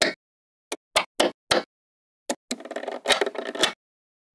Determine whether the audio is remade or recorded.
recorded